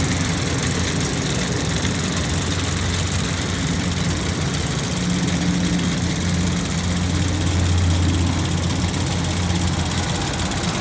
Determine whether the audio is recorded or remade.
recorded